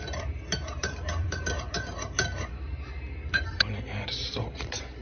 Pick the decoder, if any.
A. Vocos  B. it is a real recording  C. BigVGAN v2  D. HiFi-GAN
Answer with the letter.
C